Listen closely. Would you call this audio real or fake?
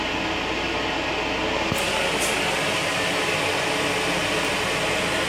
real